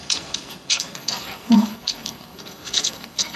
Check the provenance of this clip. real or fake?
fake